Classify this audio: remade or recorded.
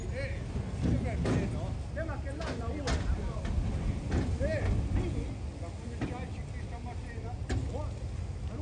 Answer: recorded